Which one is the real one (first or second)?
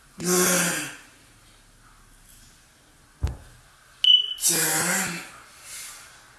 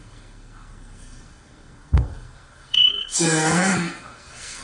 first